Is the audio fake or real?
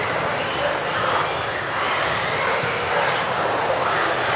real